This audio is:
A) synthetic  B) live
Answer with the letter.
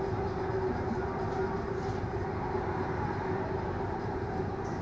A